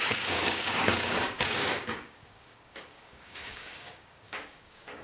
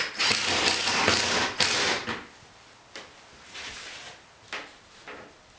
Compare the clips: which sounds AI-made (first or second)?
first